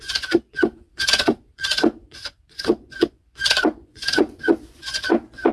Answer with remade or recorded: remade